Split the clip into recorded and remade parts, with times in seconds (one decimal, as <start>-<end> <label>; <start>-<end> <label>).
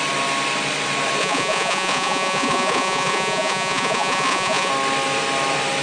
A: 0.0-1.2 recorded; 1.2-4.7 remade; 4.7-5.8 recorded